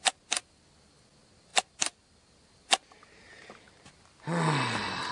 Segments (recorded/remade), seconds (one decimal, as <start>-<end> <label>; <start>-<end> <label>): 0.0-5.1 recorded